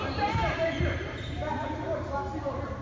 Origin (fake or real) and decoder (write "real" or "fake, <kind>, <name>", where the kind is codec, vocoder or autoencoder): fake, vocoder, BigVGAN v2